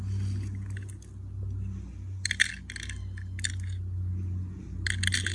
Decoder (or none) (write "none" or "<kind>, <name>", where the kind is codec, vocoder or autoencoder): none